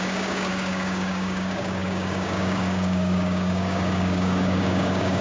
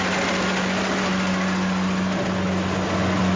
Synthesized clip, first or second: first